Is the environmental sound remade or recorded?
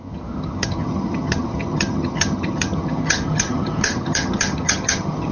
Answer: remade